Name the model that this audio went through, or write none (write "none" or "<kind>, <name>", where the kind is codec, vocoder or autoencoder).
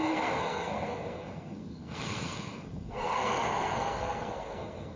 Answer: codec, SNAC